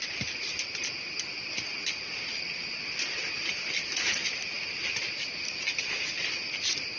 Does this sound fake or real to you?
real